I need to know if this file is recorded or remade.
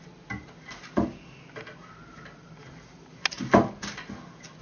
recorded